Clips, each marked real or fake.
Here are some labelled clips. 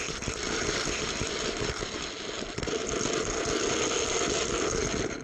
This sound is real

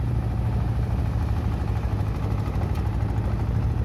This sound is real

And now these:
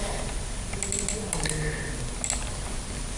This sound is real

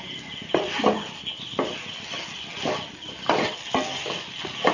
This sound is real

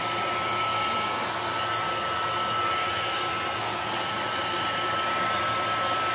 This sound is real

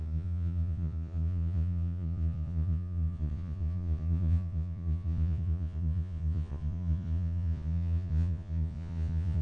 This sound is fake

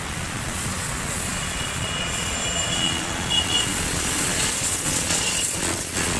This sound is fake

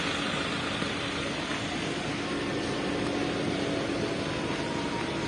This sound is real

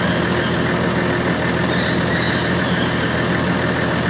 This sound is real